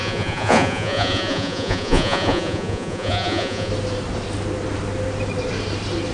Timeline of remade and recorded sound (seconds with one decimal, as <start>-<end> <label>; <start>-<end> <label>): 0.0-3.7 remade; 3.7-6.1 recorded